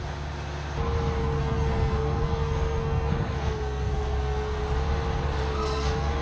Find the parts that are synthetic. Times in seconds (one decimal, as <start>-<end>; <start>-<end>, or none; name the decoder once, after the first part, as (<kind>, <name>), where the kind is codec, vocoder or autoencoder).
1.2-4.6 (codec, SNAC); 5.4-6.2